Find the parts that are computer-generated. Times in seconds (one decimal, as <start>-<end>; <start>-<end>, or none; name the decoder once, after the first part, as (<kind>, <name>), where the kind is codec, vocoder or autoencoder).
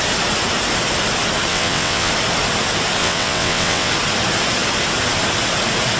1.5-2.1 (vocoder, WaveNeXt); 3.0-3.9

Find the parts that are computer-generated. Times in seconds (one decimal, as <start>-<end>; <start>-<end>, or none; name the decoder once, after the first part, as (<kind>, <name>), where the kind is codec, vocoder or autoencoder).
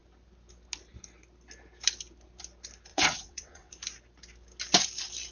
2.9-3.7 (vocoder, WaveNeXt)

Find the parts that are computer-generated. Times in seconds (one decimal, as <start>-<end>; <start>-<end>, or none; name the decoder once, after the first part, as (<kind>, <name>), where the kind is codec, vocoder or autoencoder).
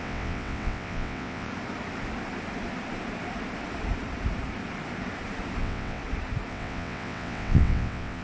0.0-1.5 (vocoder, WaveNeXt); 5.6-6.0; 6.5-8.2